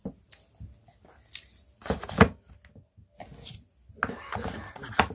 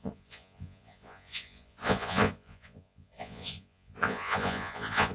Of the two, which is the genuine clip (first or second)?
first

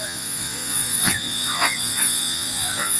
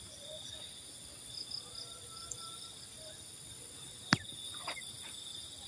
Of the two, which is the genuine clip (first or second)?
second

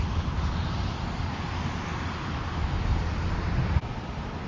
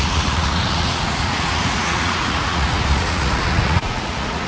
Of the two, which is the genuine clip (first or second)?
first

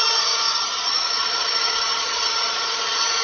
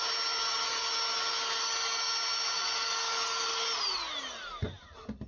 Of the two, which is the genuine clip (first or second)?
second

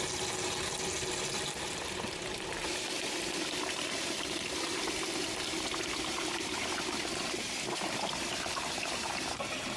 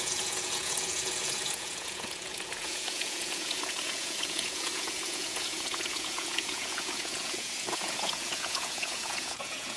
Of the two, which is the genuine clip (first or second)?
first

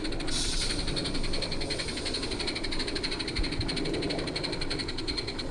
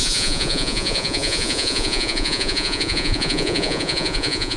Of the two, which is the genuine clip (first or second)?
first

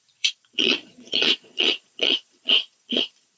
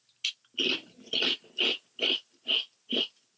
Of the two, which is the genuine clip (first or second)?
second